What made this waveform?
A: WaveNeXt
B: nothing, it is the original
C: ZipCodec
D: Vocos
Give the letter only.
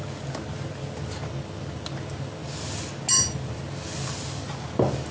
B